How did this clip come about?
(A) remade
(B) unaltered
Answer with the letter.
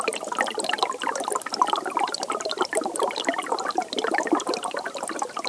B